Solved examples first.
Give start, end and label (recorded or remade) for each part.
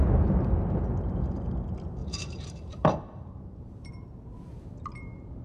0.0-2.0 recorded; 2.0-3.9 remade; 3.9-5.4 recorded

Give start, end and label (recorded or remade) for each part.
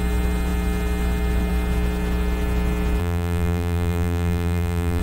0.0-3.0 recorded; 3.0-5.0 remade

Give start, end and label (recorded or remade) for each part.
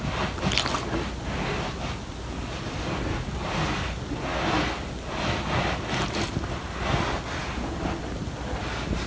0.0-9.1 recorded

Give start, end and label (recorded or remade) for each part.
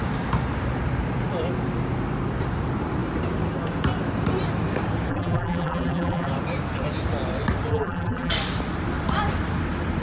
0.0-5.1 recorded; 5.1-6.3 remade; 6.3-7.7 recorded; 7.7-8.3 remade; 8.3-10.0 recorded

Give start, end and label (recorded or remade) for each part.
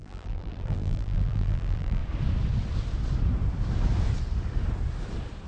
0.0-2.0 remade; 2.0-5.5 recorded